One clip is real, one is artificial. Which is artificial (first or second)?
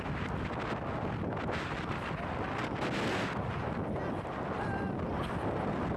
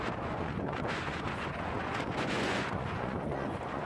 second